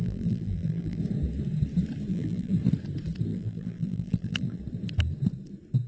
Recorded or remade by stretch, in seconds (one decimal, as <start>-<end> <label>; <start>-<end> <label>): 0.0-1.0 remade; 1.0-2.1 recorded; 2.1-2.6 remade; 2.6-3.3 recorded; 3.3-4.6 remade; 4.6-5.9 recorded